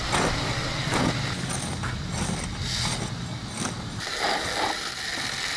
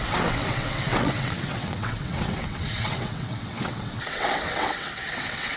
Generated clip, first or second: second